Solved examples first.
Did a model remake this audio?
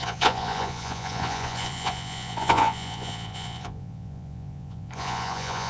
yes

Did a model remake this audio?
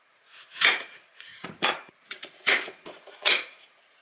yes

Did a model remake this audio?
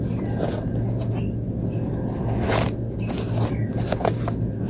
no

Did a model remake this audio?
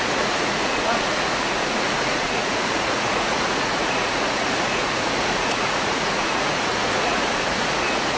yes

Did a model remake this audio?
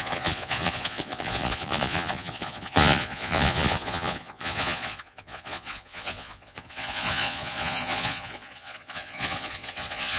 yes